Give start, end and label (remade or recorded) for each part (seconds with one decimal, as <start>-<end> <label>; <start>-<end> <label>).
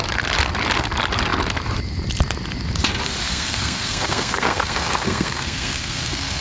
0.0-3.3 recorded; 3.3-6.4 remade